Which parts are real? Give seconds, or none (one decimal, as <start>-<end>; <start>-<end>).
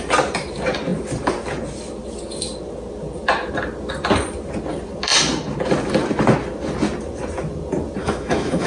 0.0-8.0